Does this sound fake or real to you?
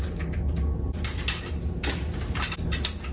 real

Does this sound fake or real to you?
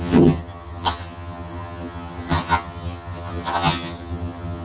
fake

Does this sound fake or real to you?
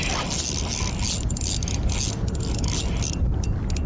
real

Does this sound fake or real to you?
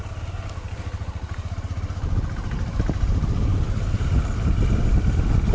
real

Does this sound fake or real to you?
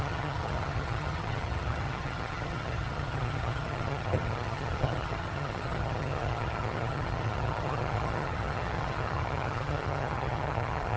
fake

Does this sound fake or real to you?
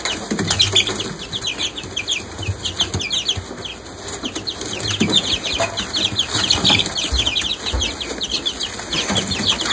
real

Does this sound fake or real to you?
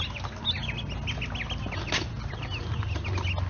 real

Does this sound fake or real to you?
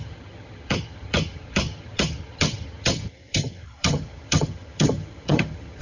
fake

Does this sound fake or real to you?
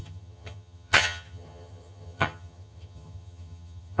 fake